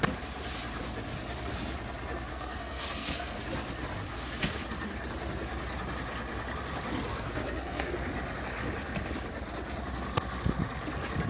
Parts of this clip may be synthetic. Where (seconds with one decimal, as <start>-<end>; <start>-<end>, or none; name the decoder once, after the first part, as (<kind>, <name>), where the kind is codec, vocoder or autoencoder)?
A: 2.3-3.4 (codec, SNAC); 7.1-7.9